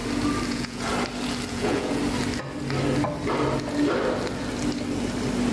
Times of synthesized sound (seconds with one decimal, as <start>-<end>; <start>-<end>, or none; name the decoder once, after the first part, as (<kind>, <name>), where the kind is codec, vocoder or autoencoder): 0.5-0.9 (vocoder, Vocos); 1.5-2.0